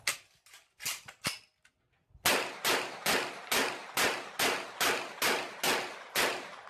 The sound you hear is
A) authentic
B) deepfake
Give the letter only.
A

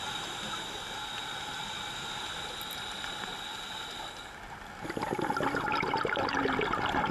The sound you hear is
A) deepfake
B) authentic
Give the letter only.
B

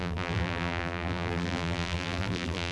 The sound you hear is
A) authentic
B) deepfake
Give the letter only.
B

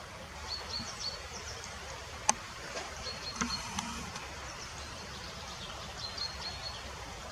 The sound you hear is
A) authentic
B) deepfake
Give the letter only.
B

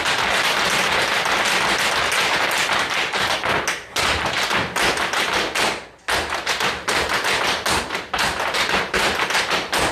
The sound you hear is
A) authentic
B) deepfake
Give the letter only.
A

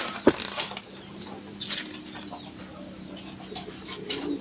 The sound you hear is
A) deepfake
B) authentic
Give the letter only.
B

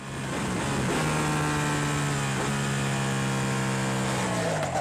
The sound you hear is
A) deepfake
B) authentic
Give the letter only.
B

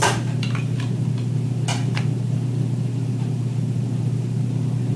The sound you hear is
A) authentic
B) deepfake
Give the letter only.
B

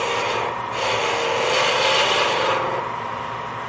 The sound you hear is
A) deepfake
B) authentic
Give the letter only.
B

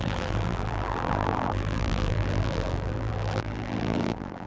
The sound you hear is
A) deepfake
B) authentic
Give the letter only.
A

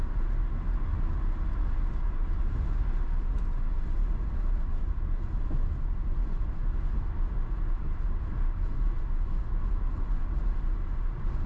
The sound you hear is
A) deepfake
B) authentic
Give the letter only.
B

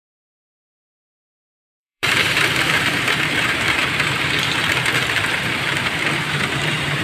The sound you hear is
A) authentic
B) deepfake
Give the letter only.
B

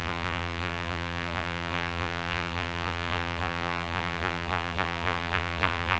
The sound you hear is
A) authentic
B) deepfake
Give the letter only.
B